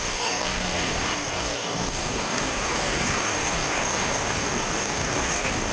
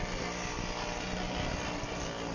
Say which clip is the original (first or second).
second